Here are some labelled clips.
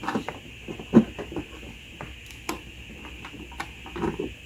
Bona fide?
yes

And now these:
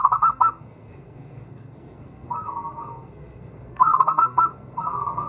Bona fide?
no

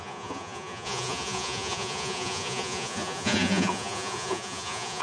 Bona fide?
no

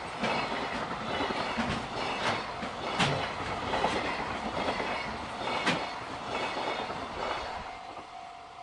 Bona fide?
yes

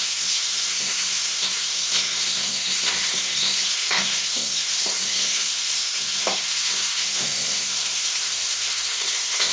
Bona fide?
no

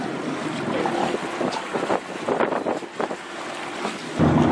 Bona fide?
yes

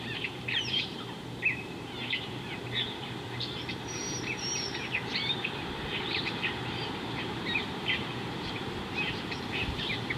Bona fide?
no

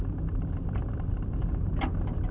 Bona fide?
yes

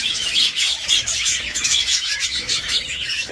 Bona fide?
no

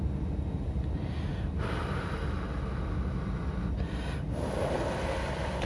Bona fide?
yes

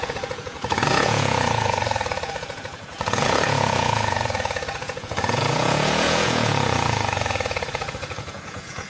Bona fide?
no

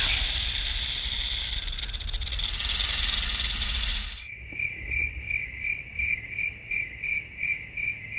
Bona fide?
yes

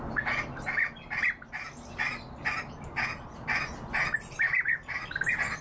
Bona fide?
yes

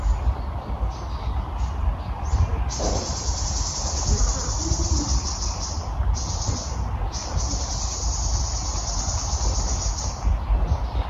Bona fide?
yes